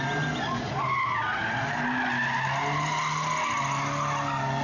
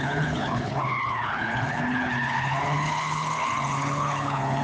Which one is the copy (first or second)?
second